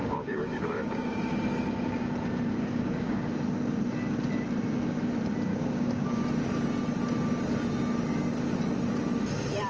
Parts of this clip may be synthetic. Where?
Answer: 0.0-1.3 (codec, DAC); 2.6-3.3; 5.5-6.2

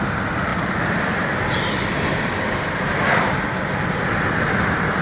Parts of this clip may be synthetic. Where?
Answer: none

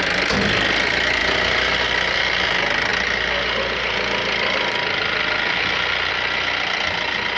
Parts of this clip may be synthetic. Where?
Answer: none

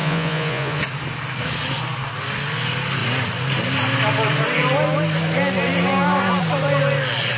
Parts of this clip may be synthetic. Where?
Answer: 0.0-0.8 (vocoder, Vocos)

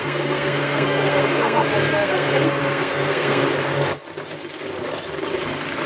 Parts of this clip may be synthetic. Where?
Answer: 0.0-3.4 (codec, SNAC)

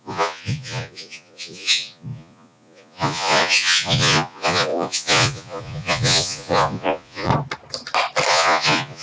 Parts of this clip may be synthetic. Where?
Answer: 0.0-7.3 (vocoder, Vocos); 8.3-9.0

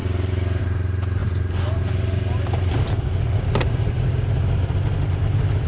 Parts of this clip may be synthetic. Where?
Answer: none